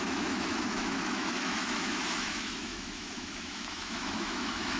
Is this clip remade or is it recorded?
remade